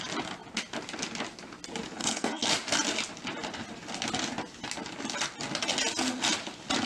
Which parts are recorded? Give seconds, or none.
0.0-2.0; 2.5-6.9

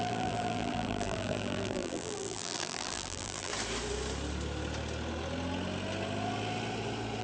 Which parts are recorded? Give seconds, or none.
3.5-7.2

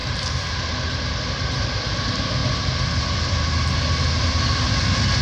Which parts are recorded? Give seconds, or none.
0.0-5.2

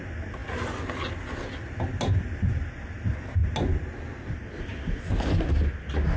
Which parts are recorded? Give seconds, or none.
0.0-6.2

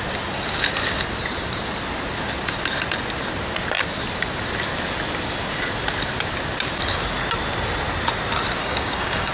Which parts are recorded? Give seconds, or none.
0.0-8.6

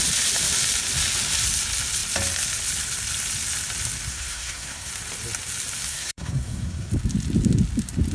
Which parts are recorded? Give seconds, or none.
0.0-4.1; 4.9-5.9; 6.9-8.1